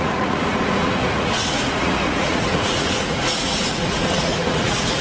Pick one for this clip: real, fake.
fake